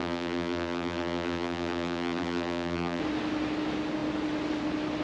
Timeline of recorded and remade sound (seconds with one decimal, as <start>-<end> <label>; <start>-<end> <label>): 0.0-3.0 remade; 3.0-5.0 recorded